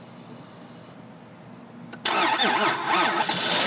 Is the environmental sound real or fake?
real